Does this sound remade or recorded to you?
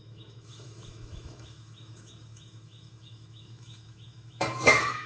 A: remade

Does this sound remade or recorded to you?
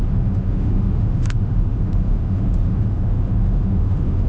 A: remade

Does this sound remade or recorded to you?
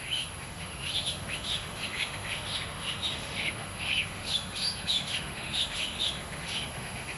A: remade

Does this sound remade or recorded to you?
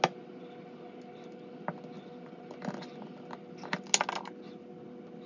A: recorded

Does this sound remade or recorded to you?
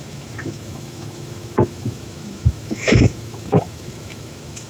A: remade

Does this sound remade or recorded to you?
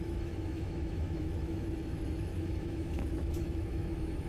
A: remade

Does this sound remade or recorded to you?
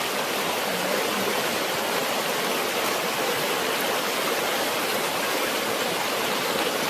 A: recorded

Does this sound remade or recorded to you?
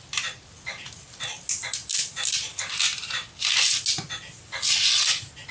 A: recorded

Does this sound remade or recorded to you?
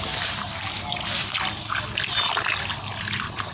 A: recorded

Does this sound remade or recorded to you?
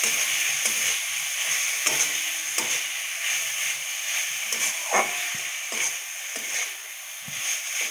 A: recorded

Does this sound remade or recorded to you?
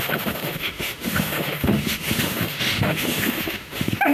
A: remade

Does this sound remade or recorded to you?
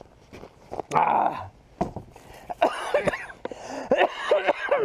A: recorded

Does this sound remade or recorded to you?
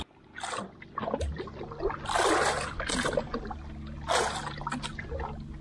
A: recorded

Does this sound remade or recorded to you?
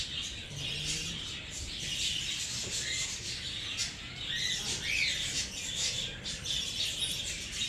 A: recorded